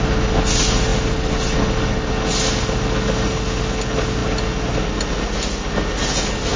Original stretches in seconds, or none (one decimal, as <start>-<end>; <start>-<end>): 0.0-6.6